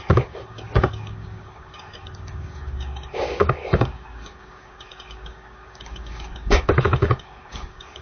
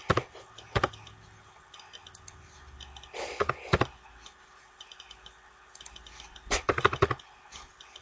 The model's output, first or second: first